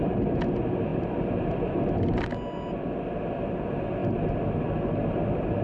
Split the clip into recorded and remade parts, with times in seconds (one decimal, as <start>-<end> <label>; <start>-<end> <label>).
0.0-5.6 recorded